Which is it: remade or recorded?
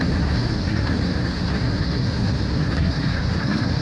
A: remade